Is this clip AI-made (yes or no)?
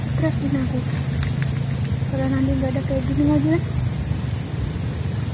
no